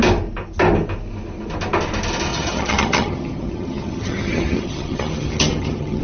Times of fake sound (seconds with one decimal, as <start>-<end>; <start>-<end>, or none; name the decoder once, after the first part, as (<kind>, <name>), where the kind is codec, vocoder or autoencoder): 2.3-6.0 (vocoder, HiFi-GAN)